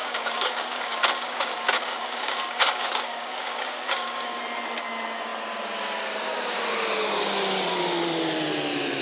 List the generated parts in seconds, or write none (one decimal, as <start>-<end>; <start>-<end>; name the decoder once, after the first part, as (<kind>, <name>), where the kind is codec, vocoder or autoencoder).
0.0-4.4 (codec, DAC)